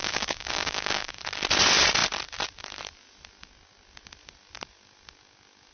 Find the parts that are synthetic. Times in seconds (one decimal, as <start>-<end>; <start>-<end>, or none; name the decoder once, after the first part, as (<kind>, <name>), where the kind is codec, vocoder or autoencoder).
0.0-1.2 (codec, DAC)